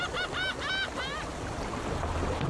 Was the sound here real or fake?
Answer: real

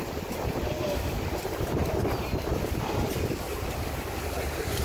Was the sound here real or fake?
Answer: fake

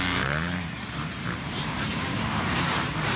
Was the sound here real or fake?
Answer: fake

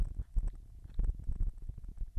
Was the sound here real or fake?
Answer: real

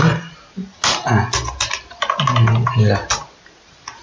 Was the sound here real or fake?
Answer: real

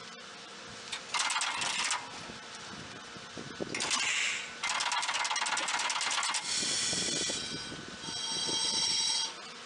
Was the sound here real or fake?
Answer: real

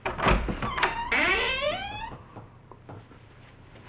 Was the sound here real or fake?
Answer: fake